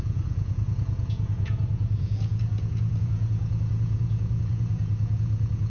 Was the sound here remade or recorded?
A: remade